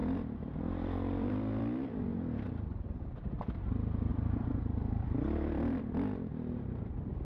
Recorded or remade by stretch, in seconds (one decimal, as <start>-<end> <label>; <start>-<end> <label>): 0.0-2.0 remade; 2.0-4.1 recorded; 4.1-5.8 remade; 5.8-7.2 recorded